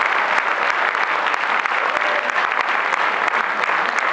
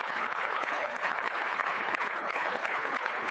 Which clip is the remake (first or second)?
second